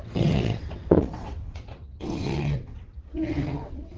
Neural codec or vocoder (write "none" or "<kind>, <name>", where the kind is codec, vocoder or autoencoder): vocoder, WaveNeXt